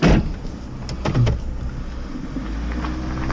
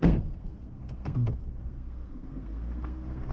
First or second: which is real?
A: first